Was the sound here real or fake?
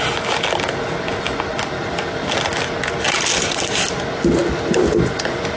real